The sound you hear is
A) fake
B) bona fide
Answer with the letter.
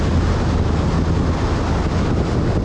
B